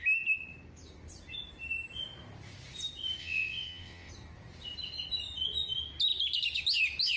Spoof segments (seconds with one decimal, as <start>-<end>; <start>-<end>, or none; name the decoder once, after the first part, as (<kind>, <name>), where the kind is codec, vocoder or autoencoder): 3.2-4.1 (vocoder, WaveNeXt)